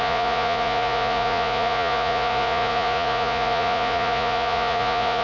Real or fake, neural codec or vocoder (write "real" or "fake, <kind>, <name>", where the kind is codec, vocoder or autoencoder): fake, vocoder, Vocos